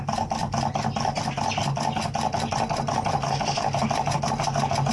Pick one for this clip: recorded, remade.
recorded